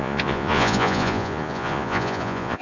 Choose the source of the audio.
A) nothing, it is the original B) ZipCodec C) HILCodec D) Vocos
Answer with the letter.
D